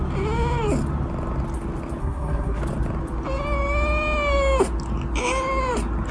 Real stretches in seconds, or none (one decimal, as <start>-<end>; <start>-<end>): 0.0-2.0; 2.6-6.1